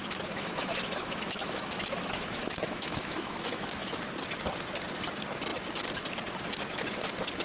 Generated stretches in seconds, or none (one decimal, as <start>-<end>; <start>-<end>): 0.0-4.0